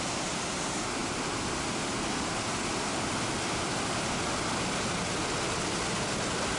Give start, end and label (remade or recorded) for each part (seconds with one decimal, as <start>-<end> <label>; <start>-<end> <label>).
0.0-6.6 recorded